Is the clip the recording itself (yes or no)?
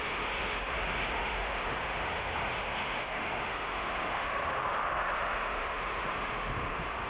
no